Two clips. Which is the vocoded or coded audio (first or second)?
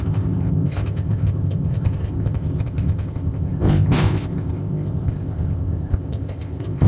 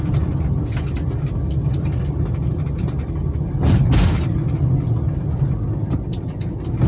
first